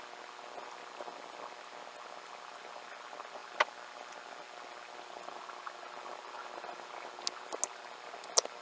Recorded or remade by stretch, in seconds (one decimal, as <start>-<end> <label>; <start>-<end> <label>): 0.0-8.6 recorded